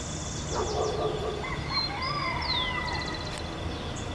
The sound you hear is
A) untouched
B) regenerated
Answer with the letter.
A